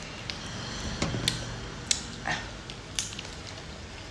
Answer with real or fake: real